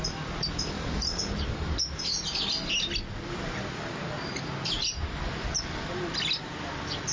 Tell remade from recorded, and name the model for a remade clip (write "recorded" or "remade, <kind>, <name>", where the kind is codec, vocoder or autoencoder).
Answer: recorded